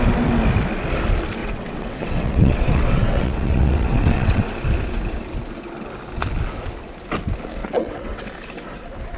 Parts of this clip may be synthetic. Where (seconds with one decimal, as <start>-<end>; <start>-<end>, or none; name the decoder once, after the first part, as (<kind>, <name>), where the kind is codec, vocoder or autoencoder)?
1.4-4.5 (vocoder, WaveNeXt); 7.6-8.3